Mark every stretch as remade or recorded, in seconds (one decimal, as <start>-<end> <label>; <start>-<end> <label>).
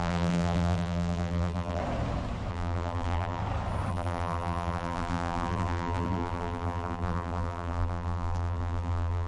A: 0.0-1.8 remade; 1.8-2.5 recorded; 2.5-3.4 remade; 3.4-3.9 recorded; 3.9-9.3 remade